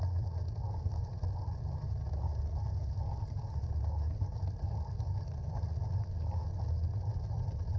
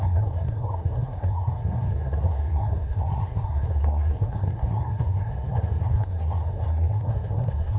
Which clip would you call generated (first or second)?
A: second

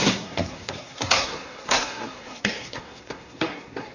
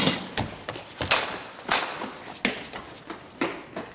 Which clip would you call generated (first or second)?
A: first